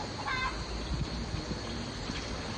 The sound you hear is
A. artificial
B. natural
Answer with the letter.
B